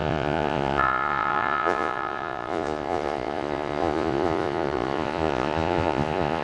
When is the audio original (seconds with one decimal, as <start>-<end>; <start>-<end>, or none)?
none